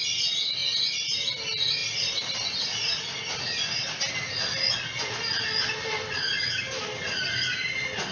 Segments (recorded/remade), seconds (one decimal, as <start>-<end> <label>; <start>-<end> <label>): 0.0-8.1 recorded